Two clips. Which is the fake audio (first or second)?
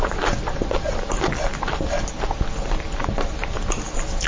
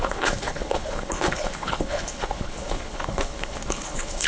second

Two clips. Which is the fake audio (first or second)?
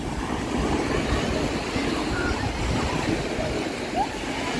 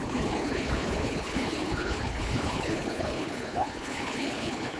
second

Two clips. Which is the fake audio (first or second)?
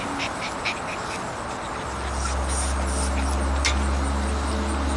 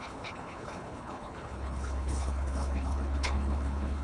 second